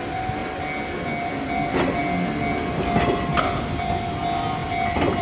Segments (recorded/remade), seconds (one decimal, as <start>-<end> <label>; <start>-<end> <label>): 0.0-5.2 recorded